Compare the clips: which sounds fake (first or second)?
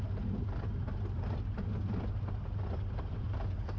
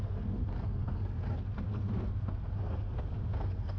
second